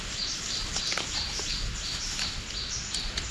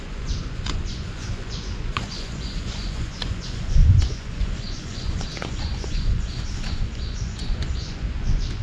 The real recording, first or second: first